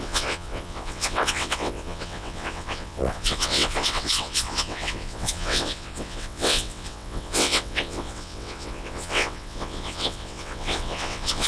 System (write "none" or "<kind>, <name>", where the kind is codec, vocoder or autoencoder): vocoder, WaveNeXt